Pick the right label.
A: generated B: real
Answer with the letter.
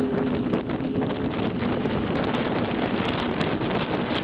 B